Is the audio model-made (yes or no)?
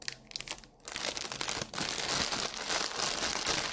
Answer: no